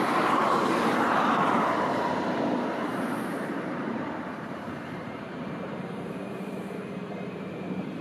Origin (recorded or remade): remade